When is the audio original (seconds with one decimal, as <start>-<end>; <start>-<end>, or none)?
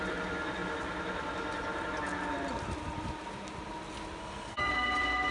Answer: 0.0-4.2; 4.7-5.3